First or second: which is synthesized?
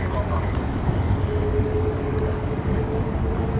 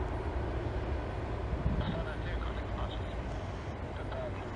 first